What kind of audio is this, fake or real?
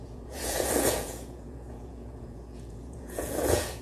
fake